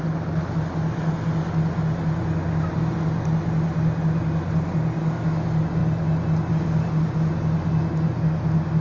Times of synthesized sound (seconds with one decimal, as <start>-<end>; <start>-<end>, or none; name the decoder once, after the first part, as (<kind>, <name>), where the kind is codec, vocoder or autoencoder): none